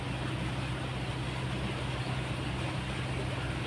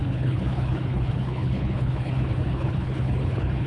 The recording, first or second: first